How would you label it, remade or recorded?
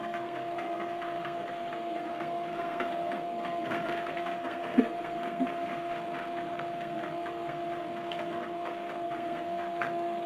remade